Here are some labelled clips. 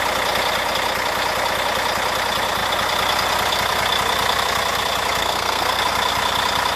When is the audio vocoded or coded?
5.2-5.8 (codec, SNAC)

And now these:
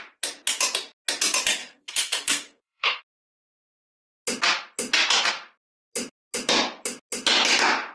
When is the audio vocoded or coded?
1.6-3.0 (codec, SNAC)